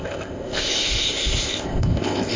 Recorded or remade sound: remade